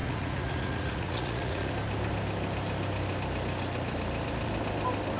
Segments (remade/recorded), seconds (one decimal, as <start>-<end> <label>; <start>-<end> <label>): 0.0-1.7 remade; 1.7-5.2 recorded